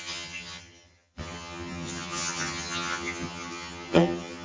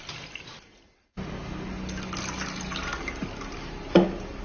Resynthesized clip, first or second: first